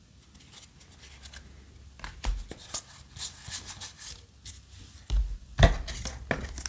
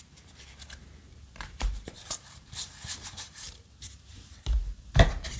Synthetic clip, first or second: second